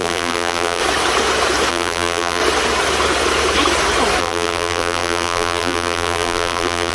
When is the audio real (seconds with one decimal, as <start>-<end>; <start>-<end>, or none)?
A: 0.8-1.7; 2.4-4.2